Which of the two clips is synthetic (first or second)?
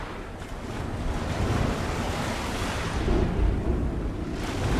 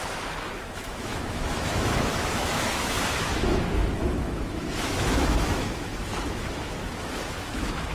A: second